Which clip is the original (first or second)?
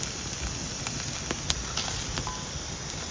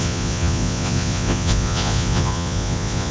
first